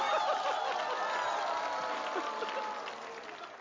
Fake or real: real